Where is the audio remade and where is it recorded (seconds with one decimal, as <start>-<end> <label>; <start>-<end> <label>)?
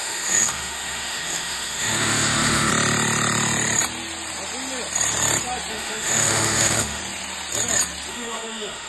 0.0-2.7 remade; 2.7-5.7 recorded; 5.7-7.0 remade; 7.0-8.1 recorded; 8.1-8.9 remade